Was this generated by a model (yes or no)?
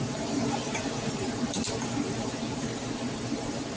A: yes